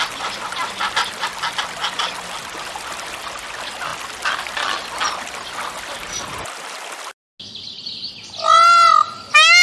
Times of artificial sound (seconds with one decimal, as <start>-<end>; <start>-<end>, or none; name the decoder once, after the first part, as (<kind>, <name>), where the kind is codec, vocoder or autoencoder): none